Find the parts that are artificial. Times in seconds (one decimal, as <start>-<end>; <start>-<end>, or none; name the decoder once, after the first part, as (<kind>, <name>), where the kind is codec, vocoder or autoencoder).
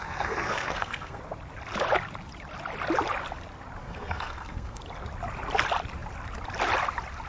0.0-1.2 (codec, SNAC); 3.8-4.8